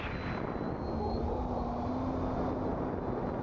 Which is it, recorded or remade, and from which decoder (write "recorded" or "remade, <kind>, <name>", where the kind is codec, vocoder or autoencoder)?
recorded